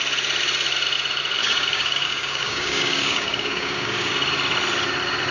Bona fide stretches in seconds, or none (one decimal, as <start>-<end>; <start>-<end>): 0.0-1.4; 4.1-5.3

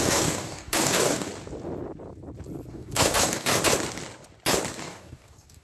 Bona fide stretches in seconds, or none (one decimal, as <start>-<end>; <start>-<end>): 1.3-2.7; 3.6-4.8

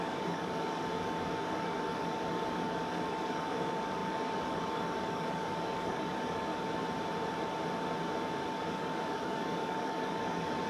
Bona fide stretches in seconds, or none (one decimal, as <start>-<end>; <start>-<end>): 6.5-8.5

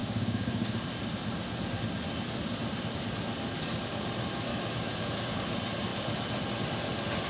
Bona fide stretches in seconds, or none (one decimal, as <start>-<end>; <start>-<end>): 0.7-4.5; 5.3-7.3

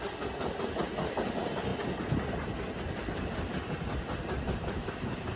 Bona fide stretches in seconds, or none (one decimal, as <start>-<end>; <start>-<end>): 0.0-5.4